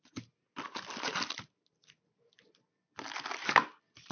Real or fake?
real